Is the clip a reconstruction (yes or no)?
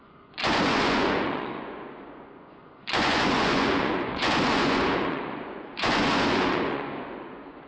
yes